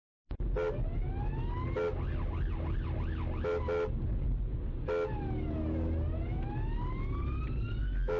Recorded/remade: recorded